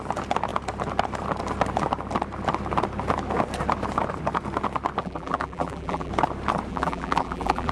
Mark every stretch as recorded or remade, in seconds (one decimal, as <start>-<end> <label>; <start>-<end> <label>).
0.0-5.0 recorded; 5.0-6.1 remade; 6.1-6.7 recorded; 6.7-7.7 remade